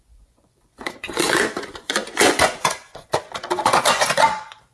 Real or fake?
fake